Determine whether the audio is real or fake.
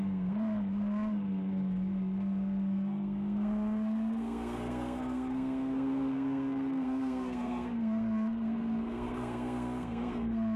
fake